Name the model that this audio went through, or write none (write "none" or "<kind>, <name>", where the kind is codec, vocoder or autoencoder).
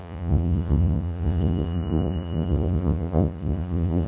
vocoder, Vocos